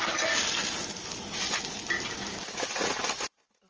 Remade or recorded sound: recorded